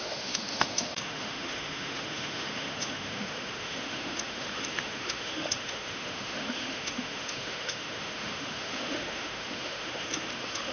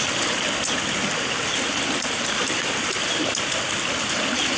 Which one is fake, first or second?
first